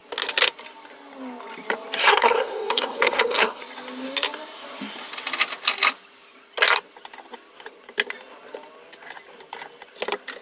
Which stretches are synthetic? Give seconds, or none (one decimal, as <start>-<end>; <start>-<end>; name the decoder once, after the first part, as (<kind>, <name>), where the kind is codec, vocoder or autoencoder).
2.0-3.6 (codec, SNAC)